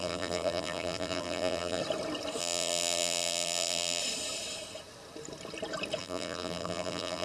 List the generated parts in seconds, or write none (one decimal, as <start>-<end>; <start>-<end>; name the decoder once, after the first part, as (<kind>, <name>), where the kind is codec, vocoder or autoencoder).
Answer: 0.0-1.8 (vocoder, BigVGAN v2); 2.4-4.0; 6.0-7.2